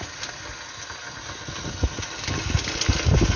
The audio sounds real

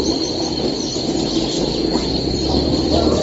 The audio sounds real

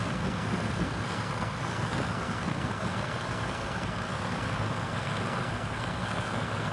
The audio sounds fake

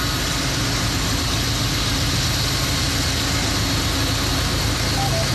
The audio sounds real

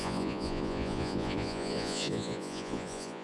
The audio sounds fake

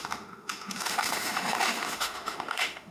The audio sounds fake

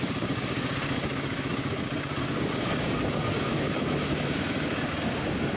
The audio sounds fake